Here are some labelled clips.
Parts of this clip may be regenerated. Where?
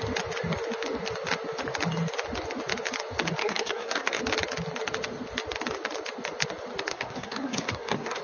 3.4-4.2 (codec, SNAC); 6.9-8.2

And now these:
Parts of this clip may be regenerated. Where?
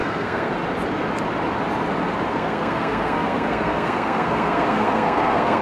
0.0-0.5 (codec, SNAC); 2.3-5.6